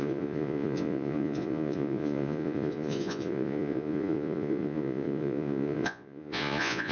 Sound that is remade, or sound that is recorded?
remade